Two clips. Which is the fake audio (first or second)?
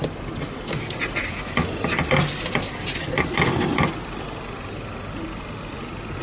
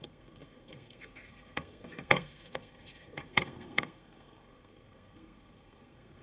second